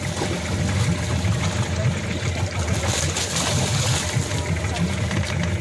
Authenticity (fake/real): real